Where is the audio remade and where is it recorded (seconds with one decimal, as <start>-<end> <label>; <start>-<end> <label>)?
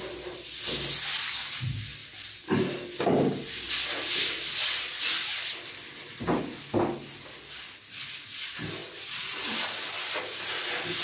0.0-11.0 recorded